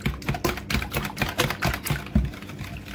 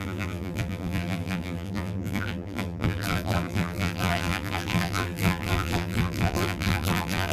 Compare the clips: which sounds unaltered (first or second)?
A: first